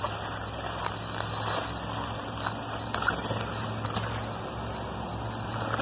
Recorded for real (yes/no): yes